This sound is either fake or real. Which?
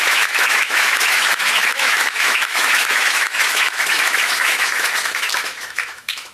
fake